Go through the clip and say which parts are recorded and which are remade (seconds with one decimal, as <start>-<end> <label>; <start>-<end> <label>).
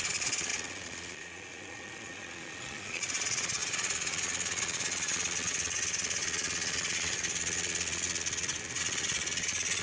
0.0-9.8 remade